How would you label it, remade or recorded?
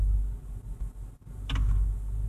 recorded